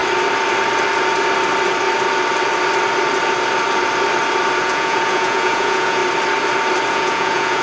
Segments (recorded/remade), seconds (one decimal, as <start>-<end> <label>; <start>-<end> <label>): 0.0-4.6 recorded; 4.6-6.0 remade; 6.0-6.9 recorded; 6.9-7.6 remade

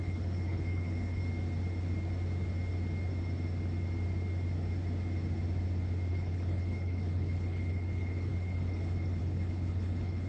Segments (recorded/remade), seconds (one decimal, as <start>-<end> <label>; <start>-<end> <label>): 0.0-1.2 remade; 1.2-6.1 recorded; 6.1-10.3 remade

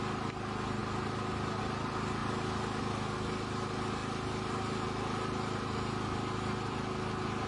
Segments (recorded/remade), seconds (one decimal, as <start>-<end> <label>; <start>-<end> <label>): 0.0-7.5 recorded

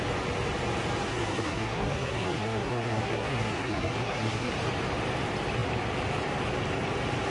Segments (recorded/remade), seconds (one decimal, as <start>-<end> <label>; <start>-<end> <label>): 0.0-1.1 recorded; 1.1-4.5 remade; 4.5-7.3 recorded

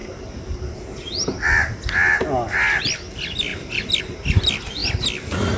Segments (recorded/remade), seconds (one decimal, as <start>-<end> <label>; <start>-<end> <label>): 0.0-5.6 recorded